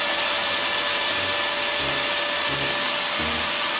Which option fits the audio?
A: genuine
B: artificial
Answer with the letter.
A